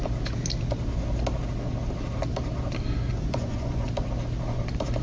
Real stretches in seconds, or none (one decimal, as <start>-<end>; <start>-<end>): 0.0-3.1; 3.9-5.0